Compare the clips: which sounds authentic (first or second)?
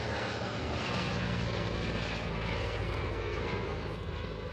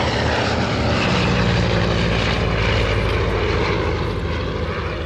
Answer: second